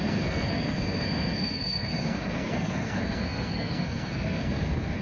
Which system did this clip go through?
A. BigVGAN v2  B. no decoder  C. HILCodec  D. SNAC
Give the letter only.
D